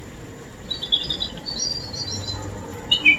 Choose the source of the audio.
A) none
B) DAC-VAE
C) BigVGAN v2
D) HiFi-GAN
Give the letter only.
C